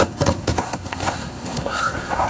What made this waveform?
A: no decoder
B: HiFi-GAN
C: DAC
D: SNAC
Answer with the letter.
D